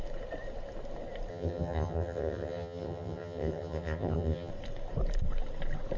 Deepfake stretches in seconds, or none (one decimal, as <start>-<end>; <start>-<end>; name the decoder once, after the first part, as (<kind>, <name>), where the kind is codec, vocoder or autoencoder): 1.3-4.5 (vocoder, HiFi-GAN)